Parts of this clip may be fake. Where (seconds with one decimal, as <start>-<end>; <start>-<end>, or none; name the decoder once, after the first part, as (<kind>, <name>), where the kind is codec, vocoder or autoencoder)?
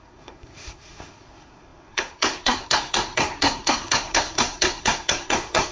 0.0-5.7 (codec, SNAC)